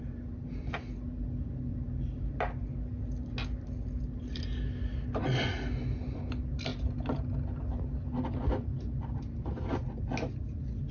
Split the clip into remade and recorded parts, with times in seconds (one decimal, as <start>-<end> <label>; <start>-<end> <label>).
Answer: 0.0-10.9 recorded